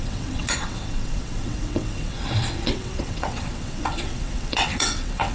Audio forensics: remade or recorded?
remade